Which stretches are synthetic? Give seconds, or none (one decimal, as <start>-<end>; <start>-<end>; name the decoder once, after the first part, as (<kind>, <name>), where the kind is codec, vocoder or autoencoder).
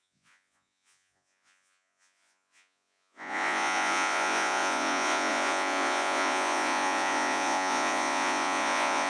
0.0-9.1 (vocoder, Vocos)